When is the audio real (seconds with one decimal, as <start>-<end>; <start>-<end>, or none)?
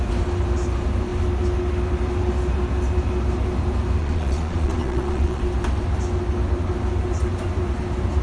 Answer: 0.0-4.0; 5.4-8.2